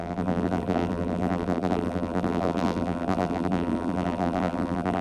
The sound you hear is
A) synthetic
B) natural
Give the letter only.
A